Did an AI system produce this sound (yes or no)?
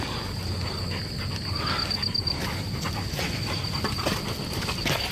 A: no